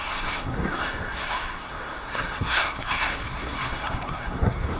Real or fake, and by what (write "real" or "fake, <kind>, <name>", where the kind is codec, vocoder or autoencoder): fake, codec, SNAC